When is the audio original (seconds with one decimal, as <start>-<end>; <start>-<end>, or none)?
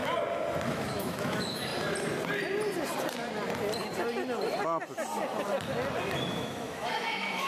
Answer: 0.0-0.7; 1.7-6.2